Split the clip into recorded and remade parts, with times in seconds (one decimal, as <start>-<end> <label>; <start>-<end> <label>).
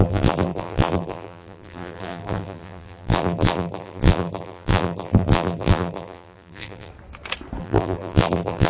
0.0-6.9 remade; 6.9-7.6 recorded; 7.6-8.7 remade